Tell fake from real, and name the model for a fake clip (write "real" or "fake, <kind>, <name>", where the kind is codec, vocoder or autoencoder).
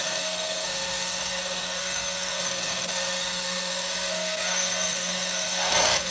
fake, codec, SNAC